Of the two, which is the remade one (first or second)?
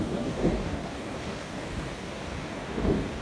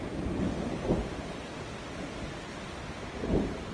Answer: first